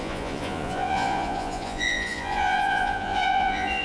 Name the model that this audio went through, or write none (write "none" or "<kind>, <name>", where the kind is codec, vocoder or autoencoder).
vocoder, Vocos